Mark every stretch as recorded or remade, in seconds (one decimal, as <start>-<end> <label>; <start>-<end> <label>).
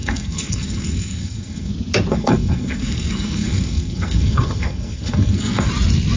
0.0-1.7 remade; 1.7-2.1 recorded; 2.1-5.7 remade; 5.7-6.2 recorded